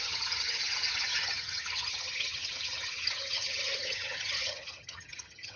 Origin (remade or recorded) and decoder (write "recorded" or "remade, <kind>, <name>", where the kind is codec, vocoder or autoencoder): remade, vocoder, HiFi-GAN